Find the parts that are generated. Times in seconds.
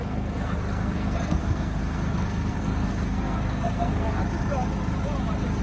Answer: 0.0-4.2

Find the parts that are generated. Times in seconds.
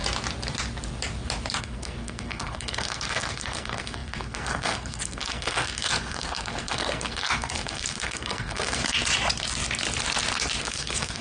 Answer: 1.6-8.8; 10.6-11.2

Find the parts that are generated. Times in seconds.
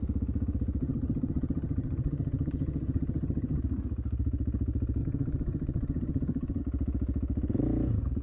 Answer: 0.8-3.6; 5.0-6.6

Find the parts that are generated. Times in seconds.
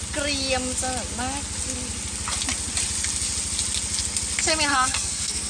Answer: 4.7-5.5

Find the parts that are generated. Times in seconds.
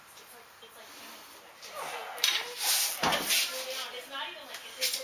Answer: none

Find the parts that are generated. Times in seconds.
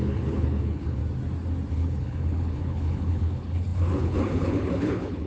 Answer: 0.0-1.0; 1.7-5.3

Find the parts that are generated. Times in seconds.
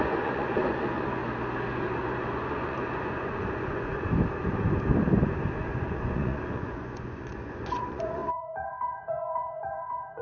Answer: 0.0-1.2; 1.7-4.1; 5.6-10.2